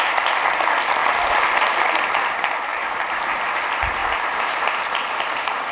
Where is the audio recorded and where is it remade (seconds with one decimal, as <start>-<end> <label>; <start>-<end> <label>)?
0.0-2.7 recorded; 2.7-3.4 remade; 3.4-4.0 recorded; 4.0-5.1 remade; 5.1-5.7 recorded